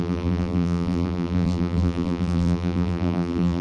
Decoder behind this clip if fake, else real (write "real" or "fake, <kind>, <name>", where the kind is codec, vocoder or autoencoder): fake, vocoder, BigVGAN v2